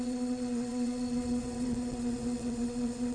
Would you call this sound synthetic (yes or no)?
yes